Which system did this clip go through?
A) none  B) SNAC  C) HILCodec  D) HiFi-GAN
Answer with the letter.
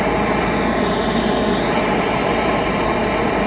A